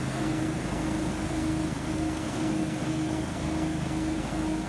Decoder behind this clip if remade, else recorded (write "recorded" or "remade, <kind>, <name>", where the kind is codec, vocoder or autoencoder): remade, codec, SNAC